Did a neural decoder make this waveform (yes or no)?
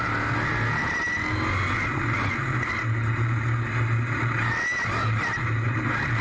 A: no